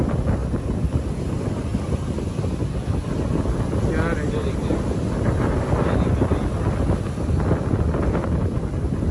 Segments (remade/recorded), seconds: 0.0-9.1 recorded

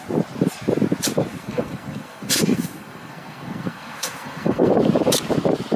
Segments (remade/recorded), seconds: 0.0-1.3 recorded; 1.3-4.7 remade; 4.7-5.8 recorded